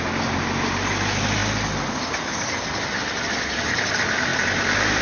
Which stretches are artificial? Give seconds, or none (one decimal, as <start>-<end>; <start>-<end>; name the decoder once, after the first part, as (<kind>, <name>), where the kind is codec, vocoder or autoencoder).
none